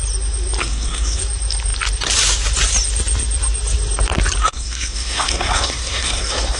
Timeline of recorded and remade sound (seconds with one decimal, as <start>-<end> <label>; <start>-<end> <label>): 0.0-0.6 recorded; 0.6-1.2 remade; 1.2-4.4 recorded; 4.4-6.6 remade